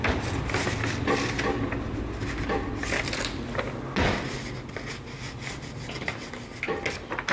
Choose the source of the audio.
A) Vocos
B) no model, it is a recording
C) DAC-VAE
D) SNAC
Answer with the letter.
B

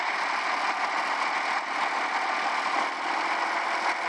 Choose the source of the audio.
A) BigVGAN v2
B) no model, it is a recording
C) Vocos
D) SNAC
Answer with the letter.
B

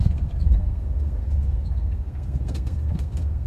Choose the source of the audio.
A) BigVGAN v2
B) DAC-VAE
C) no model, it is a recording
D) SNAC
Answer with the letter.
D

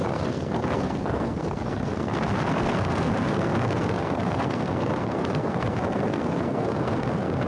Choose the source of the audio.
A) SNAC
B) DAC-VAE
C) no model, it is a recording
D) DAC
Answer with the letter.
A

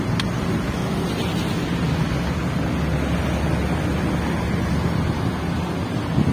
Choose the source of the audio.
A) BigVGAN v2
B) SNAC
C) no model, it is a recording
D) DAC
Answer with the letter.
C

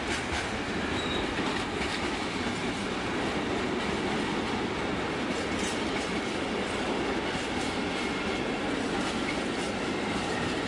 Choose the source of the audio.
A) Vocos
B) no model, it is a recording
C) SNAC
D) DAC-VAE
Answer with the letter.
B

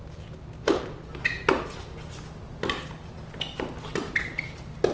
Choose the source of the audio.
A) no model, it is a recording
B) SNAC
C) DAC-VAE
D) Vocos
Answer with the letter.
A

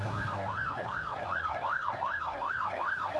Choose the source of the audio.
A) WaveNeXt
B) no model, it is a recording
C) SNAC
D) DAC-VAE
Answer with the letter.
C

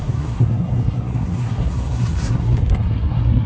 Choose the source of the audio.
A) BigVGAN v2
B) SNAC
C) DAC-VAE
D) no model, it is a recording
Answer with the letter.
B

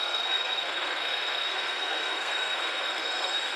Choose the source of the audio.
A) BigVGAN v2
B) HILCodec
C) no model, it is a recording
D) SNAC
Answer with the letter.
D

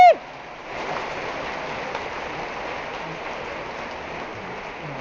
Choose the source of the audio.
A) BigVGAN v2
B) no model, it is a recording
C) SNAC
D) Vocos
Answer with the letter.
B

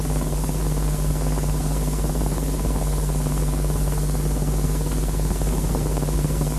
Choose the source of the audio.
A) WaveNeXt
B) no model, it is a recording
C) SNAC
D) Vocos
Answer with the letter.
C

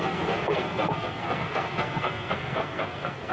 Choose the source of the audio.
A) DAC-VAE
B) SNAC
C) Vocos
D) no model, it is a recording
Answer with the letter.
B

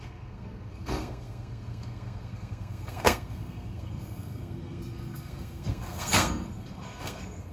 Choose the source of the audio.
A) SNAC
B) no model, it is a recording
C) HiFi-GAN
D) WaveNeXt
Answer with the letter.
A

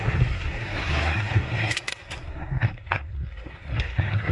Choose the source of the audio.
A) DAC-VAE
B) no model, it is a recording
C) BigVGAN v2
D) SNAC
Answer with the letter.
D